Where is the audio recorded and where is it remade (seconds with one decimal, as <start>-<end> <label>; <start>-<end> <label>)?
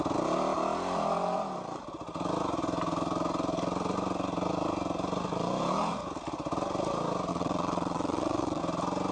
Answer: 0.0-7.3 recorded; 7.3-8.6 remade; 8.6-9.1 recorded